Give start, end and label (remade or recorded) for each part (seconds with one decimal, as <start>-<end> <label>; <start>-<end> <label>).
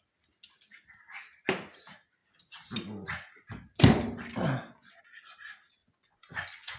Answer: 0.0-5.8 recorded; 5.8-6.8 remade